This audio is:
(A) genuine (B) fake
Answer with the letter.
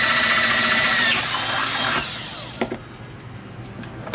A